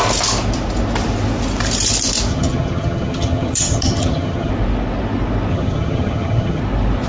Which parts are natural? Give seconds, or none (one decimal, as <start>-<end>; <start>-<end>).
0.0-2.3; 4.5-5.5; 6.6-7.1